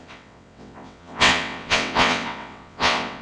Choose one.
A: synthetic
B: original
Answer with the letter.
A